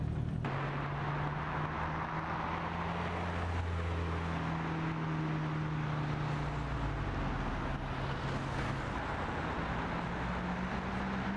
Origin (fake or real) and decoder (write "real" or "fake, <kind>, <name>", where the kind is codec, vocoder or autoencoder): real